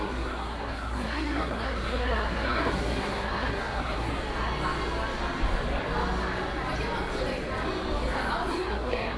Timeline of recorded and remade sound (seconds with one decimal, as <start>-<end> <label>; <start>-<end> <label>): 0.0-4.1 remade; 4.1-8.5 recorded; 8.5-9.2 remade